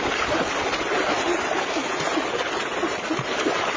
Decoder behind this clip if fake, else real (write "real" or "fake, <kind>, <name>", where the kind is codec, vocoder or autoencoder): real